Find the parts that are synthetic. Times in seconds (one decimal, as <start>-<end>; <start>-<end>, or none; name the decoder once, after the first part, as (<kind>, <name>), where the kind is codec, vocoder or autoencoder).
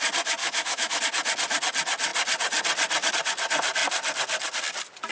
0.4-1.0 (autoencoder, DAC-VAE)